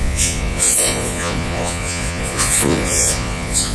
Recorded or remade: remade